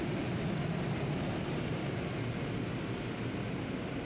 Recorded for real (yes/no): yes